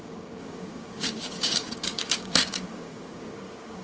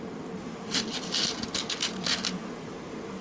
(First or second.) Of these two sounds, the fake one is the first